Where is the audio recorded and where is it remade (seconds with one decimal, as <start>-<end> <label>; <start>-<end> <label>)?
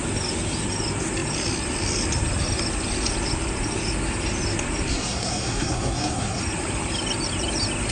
0.0-4.9 recorded; 4.9-6.4 remade; 6.4-7.9 recorded